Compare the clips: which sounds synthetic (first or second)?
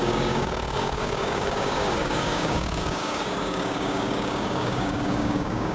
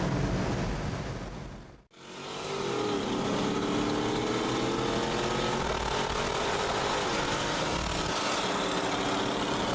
first